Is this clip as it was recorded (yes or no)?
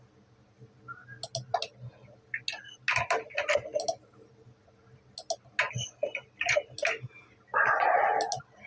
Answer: yes